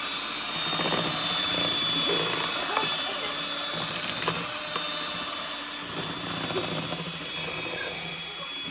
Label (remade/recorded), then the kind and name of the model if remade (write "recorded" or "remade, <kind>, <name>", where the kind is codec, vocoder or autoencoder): recorded